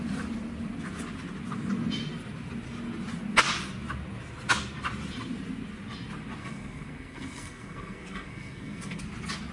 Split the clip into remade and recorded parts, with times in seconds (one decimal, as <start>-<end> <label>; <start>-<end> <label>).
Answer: 0.0-6.4 recorded; 6.4-9.0 remade; 9.0-9.5 recorded